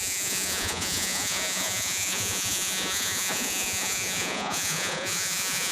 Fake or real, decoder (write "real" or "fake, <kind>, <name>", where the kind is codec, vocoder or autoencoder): fake, vocoder, Vocos